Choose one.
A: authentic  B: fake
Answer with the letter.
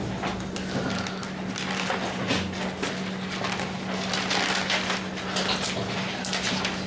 A